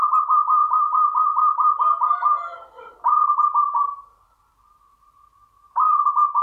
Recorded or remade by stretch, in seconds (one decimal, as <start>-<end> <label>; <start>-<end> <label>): 0.0-0.6 recorded; 0.6-4.4 remade; 4.4-6.4 recorded